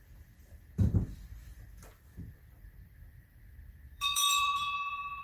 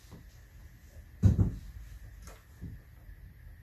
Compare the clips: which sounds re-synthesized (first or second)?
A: first